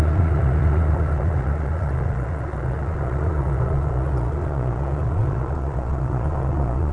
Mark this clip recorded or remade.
remade